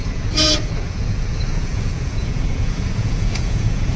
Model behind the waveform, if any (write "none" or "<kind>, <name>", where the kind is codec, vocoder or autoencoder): vocoder, Vocos